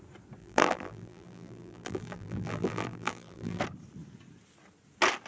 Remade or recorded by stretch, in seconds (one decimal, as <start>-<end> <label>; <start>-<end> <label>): 0.0-0.4 recorded; 0.4-3.6 remade; 3.6-5.3 recorded